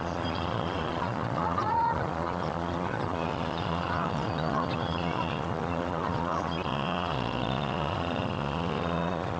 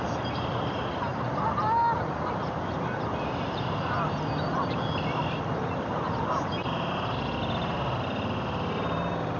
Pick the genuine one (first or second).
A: second